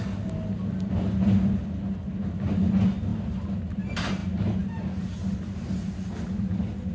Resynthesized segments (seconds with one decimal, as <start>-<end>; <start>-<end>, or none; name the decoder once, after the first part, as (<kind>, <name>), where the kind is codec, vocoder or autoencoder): none